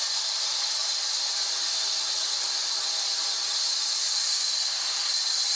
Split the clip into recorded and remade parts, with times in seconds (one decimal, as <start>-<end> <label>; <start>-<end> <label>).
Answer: 0.0-5.6 recorded